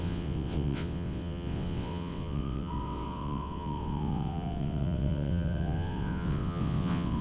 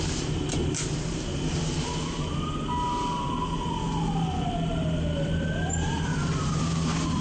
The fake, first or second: first